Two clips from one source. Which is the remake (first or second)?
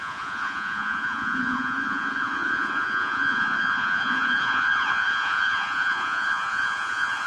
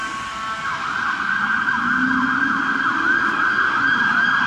first